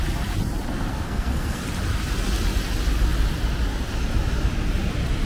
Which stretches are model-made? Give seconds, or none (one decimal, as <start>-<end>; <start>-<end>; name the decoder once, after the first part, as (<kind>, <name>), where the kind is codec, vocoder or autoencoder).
0.9-1.6 (codec, SNAC)